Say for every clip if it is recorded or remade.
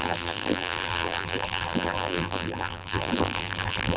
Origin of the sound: remade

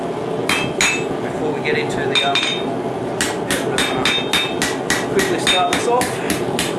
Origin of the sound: recorded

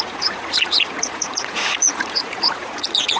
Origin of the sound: remade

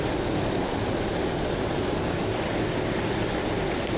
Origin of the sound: recorded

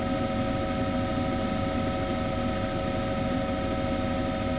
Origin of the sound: recorded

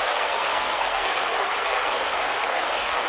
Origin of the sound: remade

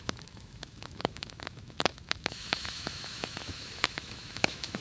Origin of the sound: remade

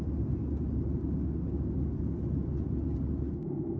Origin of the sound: recorded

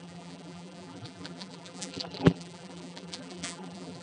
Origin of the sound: remade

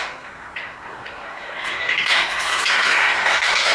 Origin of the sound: remade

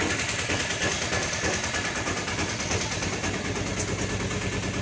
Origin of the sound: recorded